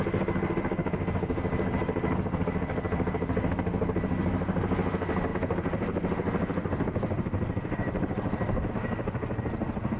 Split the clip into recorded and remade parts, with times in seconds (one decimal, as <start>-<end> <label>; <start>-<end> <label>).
0.0-5.3 recorded; 5.3-8.7 remade; 8.7-10.0 recorded